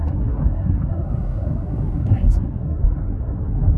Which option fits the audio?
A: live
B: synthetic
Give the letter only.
B